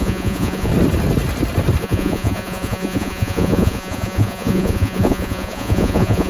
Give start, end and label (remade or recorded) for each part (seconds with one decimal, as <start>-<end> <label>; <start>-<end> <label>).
0.0-0.7 remade; 0.7-1.8 recorded; 1.8-6.3 remade